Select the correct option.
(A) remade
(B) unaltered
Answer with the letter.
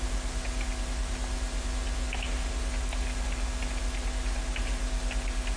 B